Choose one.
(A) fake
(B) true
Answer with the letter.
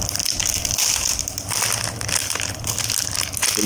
B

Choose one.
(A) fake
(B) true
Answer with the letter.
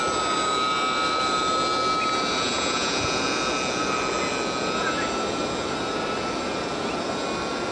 B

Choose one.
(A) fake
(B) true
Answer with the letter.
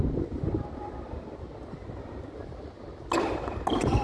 B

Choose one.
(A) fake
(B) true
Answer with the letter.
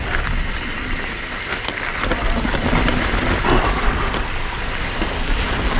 B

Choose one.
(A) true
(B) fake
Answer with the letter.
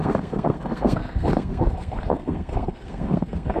B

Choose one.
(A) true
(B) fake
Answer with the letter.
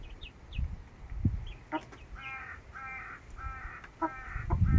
A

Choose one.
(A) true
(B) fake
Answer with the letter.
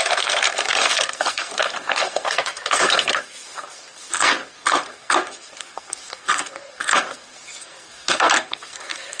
B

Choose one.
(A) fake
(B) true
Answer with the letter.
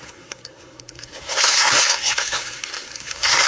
A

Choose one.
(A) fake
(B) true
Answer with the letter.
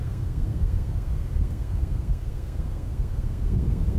A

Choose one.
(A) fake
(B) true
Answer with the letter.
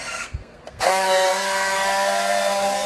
A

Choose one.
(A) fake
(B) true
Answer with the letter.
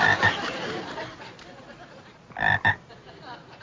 B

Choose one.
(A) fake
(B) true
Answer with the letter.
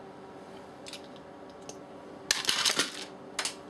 B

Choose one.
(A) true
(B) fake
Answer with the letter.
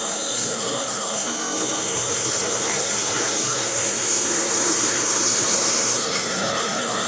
B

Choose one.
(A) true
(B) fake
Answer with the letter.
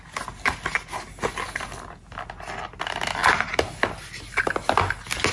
A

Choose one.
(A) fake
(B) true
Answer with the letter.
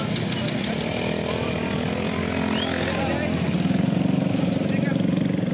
B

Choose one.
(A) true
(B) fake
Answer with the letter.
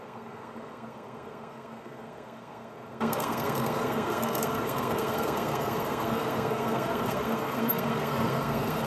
B